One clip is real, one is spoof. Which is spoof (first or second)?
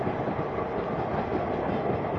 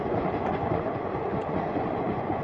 second